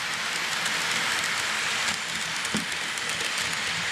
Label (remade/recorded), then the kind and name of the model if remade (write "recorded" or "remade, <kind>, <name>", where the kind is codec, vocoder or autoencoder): recorded